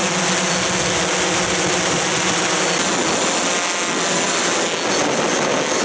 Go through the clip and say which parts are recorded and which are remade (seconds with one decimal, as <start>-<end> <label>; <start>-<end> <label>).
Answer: 0.0-5.8 recorded